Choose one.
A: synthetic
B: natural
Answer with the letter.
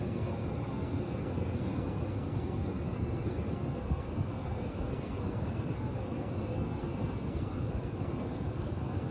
A